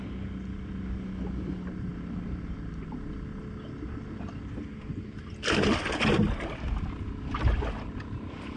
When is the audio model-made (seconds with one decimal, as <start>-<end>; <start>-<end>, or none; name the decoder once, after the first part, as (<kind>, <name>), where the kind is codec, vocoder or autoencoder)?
none